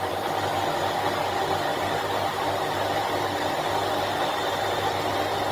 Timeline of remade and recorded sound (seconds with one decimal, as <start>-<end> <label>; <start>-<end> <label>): 0.0-5.5 recorded